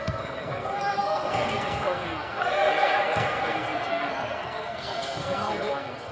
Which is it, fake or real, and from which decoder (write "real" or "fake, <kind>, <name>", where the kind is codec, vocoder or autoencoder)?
fake, codec, SNAC